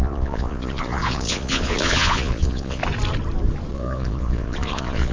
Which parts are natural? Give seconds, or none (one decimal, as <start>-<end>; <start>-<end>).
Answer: 2.8-3.7